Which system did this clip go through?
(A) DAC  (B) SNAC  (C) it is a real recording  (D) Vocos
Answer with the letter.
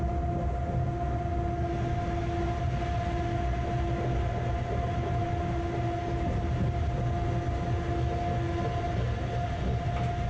C